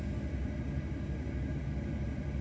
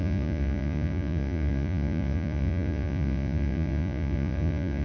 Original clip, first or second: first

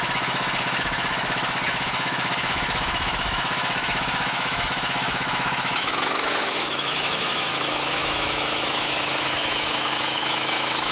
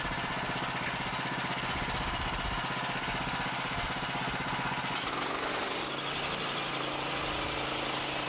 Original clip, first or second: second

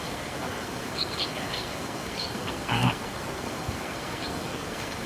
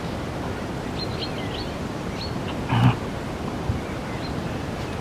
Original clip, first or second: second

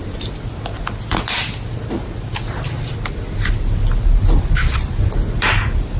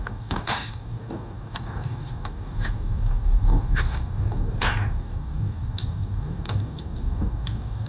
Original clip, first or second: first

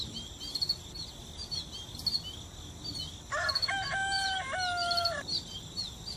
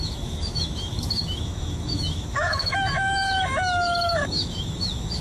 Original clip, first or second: first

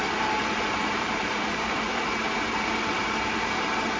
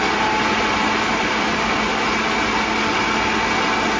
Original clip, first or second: second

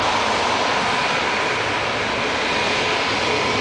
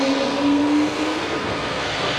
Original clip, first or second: first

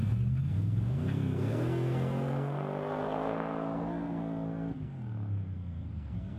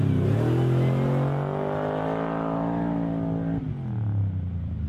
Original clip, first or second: second